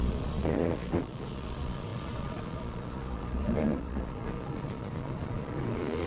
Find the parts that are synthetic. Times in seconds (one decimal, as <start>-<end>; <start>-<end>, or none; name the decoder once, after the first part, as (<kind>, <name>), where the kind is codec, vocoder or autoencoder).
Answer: 0.0-6.1 (vocoder, Vocos)